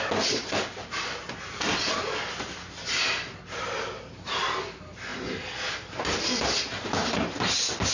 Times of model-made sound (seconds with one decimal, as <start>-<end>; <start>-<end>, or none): none